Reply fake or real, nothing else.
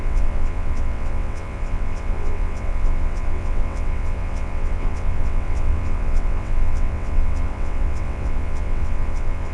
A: fake